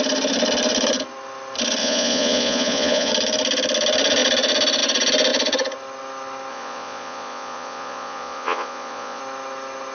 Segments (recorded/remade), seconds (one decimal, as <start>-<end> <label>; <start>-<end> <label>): 0.0-1.8 recorded; 1.8-3.1 remade; 3.1-6.5 recorded; 6.5-9.2 remade; 9.2-9.9 recorded